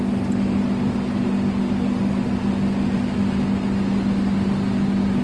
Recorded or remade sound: recorded